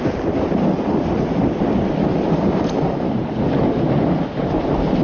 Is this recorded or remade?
recorded